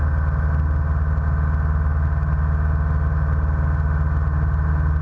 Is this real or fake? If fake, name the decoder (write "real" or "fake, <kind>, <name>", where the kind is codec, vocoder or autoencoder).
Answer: real